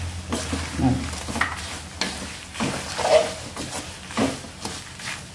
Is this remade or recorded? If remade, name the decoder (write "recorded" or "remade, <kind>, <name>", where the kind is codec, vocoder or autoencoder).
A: recorded